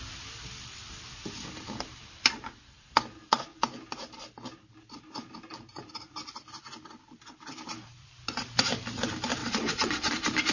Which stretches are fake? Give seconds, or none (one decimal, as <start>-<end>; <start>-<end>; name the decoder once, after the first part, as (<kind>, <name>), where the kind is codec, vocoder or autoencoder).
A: 9.4-10.1 (vocoder, WaveNeXt)